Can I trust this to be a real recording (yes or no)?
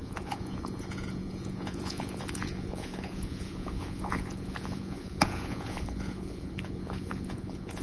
no